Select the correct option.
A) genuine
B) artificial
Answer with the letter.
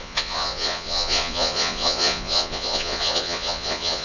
B